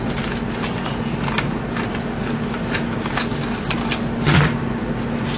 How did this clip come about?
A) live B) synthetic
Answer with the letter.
A